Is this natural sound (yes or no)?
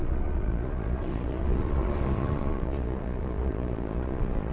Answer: no